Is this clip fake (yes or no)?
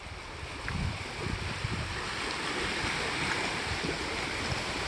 no